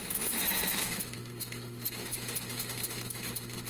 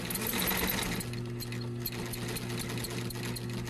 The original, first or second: second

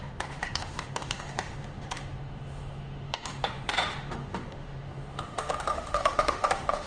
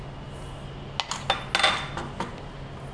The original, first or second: second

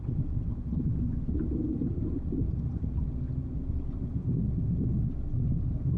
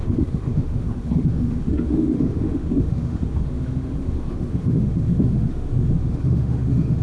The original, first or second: first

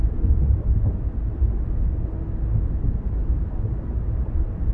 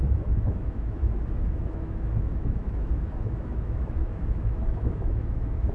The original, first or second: first